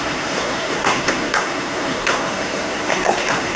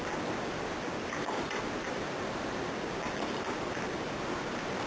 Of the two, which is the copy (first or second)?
first